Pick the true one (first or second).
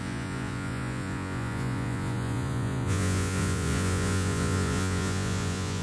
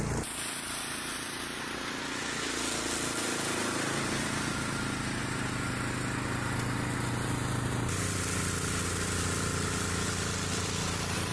second